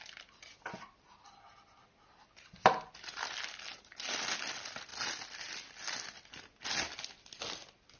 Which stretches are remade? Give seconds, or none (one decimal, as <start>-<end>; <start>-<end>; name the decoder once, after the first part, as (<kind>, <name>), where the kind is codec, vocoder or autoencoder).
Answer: none